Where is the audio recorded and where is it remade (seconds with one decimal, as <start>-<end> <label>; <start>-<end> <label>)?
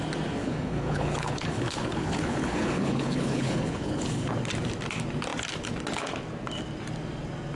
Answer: 0.0-0.4 recorded; 0.4-4.3 remade; 4.3-7.6 recorded